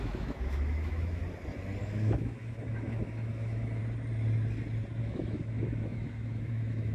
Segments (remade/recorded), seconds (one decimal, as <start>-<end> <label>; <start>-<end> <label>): 0.0-1.2 remade; 1.2-1.8 recorded; 1.8-3.8 remade; 3.8-5.0 recorded; 5.0-6.9 remade